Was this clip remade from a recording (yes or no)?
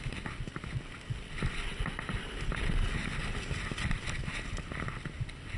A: no